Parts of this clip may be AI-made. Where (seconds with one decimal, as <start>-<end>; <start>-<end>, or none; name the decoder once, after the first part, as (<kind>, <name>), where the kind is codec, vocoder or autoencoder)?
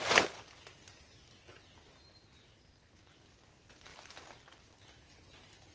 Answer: none